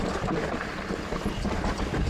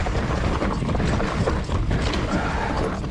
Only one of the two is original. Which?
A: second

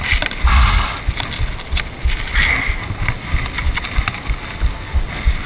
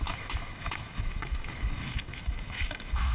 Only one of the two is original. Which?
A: first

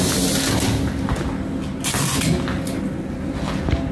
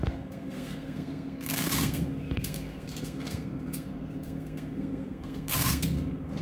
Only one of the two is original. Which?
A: first